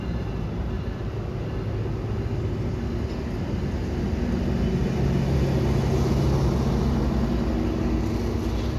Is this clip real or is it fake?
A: real